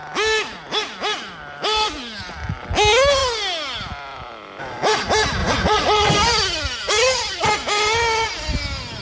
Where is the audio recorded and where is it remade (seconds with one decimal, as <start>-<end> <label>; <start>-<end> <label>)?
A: 0.0-5.4 recorded; 5.4-6.1 remade; 6.1-9.0 recorded